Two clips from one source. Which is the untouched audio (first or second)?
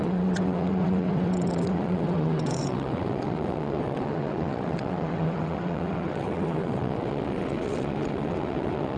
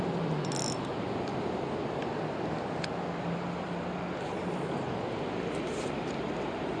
second